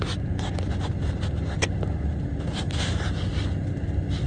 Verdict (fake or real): real